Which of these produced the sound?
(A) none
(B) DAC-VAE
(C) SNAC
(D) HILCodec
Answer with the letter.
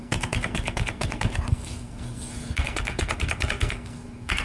C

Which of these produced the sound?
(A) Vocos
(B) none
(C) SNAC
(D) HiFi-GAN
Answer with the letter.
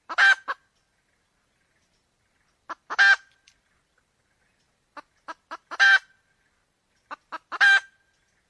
B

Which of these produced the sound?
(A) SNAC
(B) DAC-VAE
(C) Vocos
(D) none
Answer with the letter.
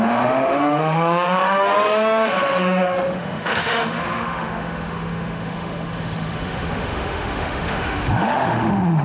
B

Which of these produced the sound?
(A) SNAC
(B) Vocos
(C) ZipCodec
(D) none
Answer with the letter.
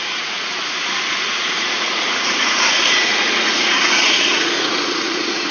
B